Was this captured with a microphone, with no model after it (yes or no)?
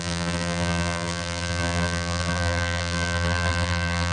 no